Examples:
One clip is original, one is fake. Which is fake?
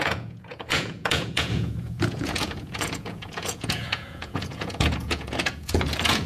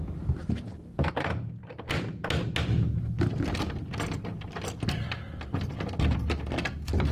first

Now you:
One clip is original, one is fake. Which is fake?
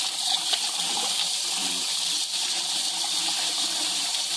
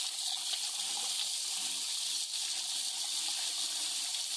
first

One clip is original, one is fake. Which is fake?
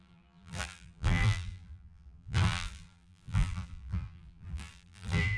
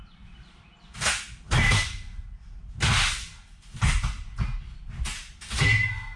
first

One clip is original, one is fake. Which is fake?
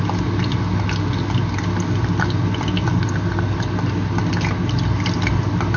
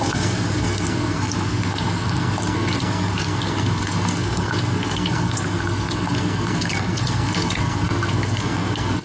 second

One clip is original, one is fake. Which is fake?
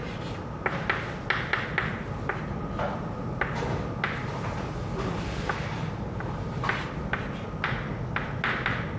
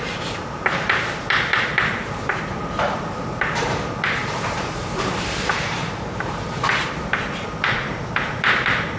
second